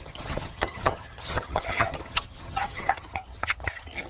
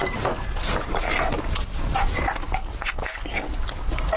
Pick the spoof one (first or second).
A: first